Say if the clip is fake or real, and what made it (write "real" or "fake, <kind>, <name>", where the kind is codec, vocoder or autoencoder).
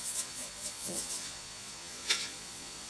fake, vocoder, Vocos